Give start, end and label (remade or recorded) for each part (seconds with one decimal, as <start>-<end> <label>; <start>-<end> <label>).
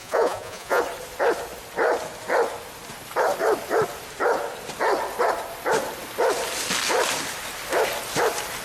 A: 0.0-0.8 remade; 0.8-8.6 recorded